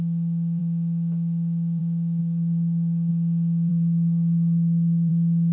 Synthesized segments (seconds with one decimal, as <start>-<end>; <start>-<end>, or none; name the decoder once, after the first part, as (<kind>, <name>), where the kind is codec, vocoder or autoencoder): 2.2-3.1 (codec, SNAC); 3.7-5.1